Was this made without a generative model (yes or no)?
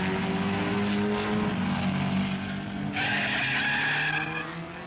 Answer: yes